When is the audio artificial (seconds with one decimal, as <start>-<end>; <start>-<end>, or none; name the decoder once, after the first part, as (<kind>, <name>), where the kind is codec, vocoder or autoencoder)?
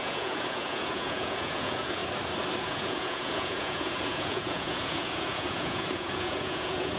0.0-2.0 (vocoder, Vocos); 2.6-7.0